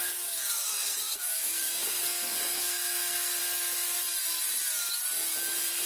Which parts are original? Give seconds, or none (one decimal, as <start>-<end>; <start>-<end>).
3.4-5.9